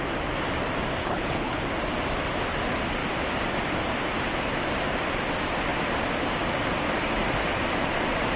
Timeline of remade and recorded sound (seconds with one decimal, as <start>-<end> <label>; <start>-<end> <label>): 0.0-1.0 recorded; 1.0-1.6 remade; 1.6-8.4 recorded